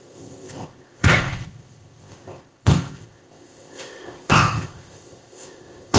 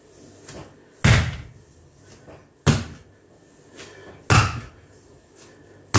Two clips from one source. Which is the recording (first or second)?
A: second